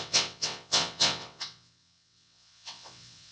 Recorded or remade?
remade